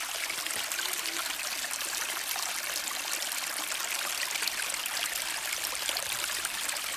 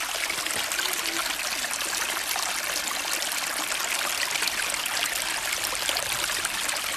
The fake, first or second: first